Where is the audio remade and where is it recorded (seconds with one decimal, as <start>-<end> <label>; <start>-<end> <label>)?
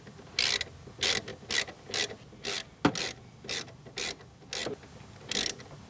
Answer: 0.0-5.9 recorded